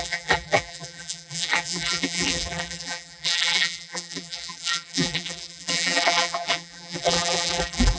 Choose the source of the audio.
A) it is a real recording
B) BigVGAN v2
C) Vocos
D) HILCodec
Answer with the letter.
B